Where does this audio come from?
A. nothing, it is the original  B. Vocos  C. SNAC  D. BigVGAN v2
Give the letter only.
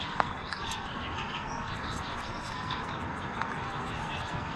C